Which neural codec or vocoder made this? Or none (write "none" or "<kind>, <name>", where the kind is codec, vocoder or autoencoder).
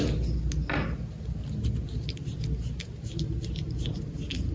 none